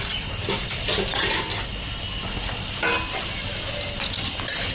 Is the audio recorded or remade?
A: recorded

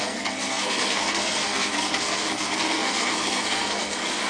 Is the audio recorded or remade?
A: remade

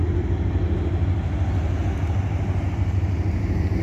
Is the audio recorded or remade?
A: recorded